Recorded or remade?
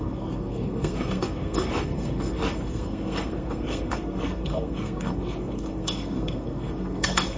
remade